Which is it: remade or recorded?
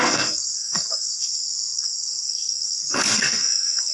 remade